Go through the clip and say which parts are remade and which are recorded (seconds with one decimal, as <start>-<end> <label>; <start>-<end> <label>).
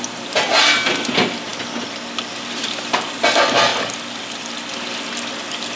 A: 0.0-5.8 recorded